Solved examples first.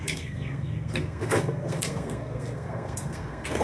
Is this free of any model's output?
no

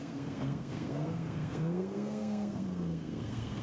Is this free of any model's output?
no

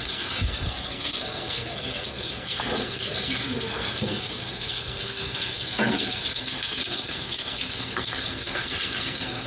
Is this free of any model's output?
no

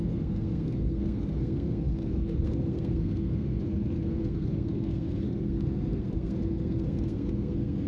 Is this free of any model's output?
no